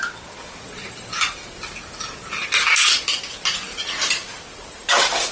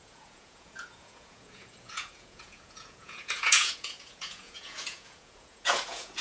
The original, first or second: first